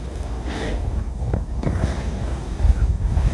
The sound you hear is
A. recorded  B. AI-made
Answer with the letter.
B